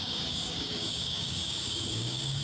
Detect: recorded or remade remade